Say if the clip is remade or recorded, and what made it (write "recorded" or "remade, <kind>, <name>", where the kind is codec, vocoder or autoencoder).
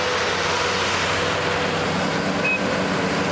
recorded